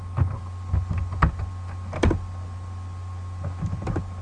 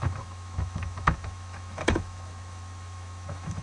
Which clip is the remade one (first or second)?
second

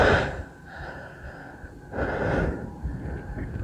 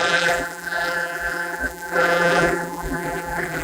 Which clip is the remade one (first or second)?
second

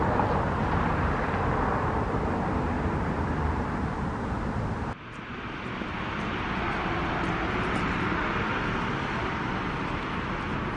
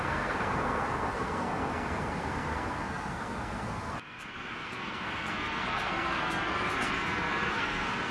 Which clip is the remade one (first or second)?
second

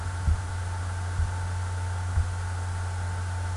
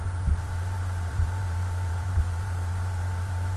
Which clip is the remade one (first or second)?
second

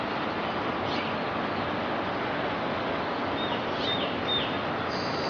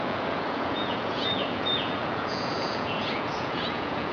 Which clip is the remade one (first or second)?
second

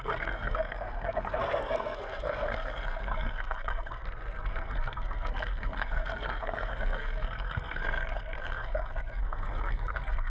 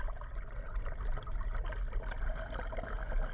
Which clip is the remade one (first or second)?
first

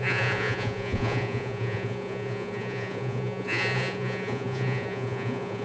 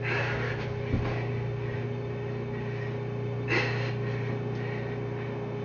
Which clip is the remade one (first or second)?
first